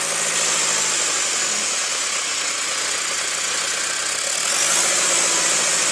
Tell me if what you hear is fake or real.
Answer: real